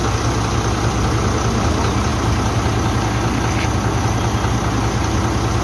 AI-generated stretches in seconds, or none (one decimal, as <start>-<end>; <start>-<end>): none